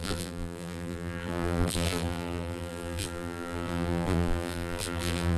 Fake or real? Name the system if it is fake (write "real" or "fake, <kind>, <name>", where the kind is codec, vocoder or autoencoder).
fake, vocoder, BigVGAN v2